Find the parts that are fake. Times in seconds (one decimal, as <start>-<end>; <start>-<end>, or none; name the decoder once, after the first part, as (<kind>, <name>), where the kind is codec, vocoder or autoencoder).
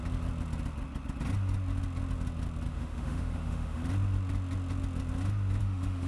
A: 2.7-3.8 (autoencoder, DAC-VAE); 5.6-6.1